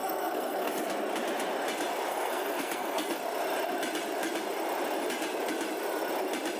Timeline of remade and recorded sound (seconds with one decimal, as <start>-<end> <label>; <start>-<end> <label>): 0.0-0.7 remade; 0.7-2.1 recorded; 2.1-3.2 remade; 3.2-6.6 recorded